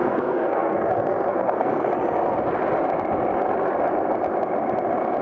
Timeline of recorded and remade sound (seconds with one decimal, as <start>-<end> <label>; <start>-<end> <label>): 0.0-1.9 remade; 1.9-5.2 recorded